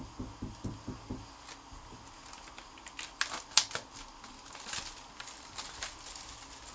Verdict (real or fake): real